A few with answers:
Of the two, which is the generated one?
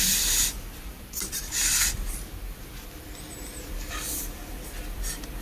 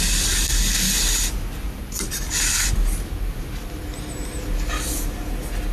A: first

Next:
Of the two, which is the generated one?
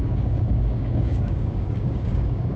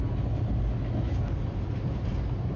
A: first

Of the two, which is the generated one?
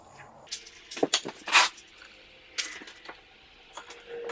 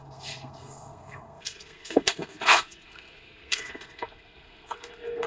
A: second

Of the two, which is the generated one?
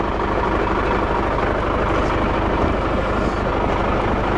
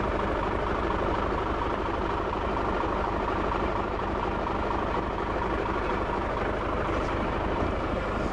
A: second